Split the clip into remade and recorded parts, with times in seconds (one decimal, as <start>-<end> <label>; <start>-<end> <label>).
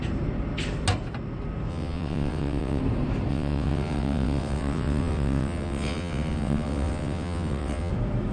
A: 0.0-1.7 recorded; 1.7-2.8 remade; 2.8-3.3 recorded; 3.3-7.9 remade; 7.9-8.3 recorded